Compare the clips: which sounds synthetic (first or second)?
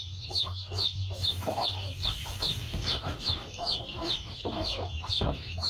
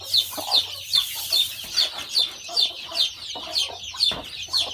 first